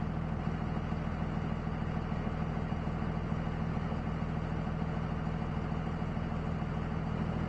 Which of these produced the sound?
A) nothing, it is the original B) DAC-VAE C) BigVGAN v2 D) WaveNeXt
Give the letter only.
A